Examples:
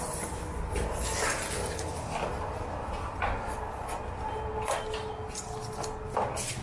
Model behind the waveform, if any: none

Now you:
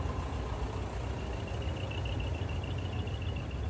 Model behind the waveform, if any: none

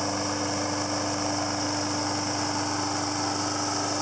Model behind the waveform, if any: none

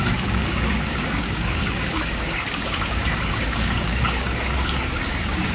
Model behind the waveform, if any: codec, DAC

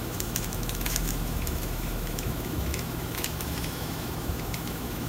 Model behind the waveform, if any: autoencoder, DAC-VAE